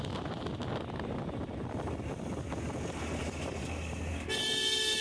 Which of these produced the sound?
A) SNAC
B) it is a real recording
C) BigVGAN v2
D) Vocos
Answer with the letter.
B